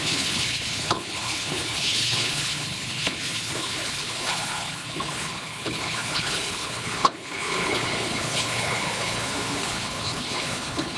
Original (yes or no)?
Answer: no